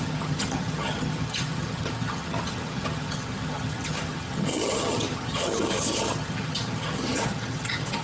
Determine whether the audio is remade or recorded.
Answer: remade